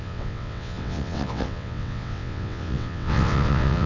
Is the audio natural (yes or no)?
no